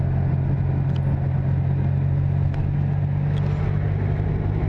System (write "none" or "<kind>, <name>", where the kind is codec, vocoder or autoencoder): none